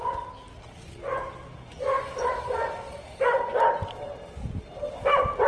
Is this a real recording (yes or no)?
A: yes